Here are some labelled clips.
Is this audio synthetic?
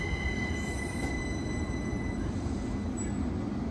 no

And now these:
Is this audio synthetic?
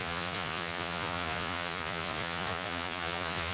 yes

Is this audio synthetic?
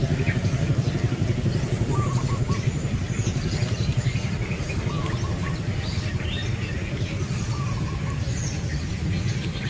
no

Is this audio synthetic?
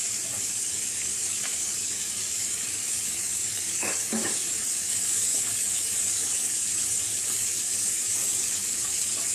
yes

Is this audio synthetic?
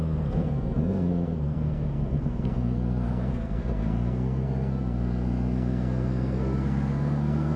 yes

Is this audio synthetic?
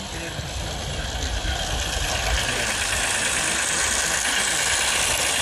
no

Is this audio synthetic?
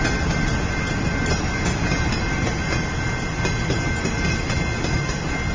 no